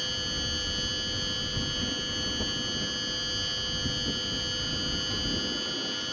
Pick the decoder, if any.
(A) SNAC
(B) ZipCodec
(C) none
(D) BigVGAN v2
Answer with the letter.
C